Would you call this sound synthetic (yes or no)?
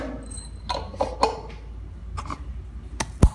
no